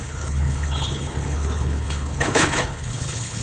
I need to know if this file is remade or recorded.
remade